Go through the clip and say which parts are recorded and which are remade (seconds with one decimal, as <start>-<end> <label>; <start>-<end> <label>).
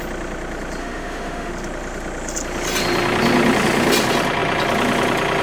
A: 0.0-0.8 recorded; 0.8-1.5 remade; 1.5-5.4 recorded